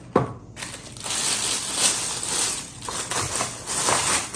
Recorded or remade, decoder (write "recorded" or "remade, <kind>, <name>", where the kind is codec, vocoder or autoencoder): recorded